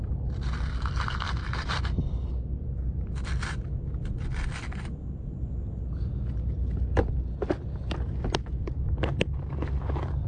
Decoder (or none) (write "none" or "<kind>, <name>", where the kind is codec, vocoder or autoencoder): none